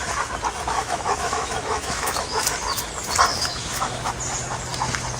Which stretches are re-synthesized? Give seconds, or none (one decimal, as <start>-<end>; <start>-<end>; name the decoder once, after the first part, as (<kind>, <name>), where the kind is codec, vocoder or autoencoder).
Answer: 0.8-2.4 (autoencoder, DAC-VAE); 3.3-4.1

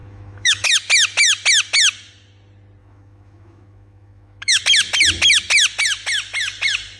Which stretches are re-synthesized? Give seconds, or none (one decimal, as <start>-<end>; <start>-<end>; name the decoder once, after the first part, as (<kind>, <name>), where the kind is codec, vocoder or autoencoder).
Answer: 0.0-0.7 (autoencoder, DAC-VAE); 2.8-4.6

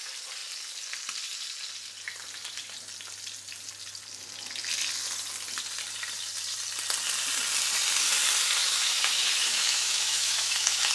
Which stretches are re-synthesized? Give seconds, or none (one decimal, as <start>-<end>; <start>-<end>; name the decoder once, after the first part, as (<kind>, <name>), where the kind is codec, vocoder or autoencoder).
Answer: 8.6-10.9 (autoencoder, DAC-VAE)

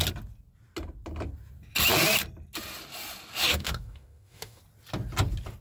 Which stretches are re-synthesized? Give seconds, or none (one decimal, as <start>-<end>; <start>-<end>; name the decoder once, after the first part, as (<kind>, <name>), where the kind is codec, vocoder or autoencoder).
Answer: 3.5-4.6 (autoencoder, DAC-VAE)

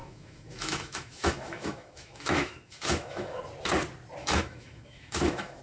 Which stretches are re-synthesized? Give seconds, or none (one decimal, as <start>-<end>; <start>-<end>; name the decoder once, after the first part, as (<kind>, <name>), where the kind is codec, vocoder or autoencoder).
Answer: 0.0-3.4 (autoencoder, DAC-VAE); 4.2-5.6

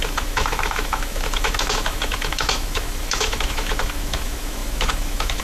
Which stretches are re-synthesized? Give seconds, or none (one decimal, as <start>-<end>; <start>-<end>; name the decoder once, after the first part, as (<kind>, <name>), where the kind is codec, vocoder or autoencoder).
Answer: 0.0-5.4 (autoencoder, DAC-VAE)